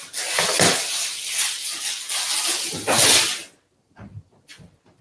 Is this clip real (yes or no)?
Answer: yes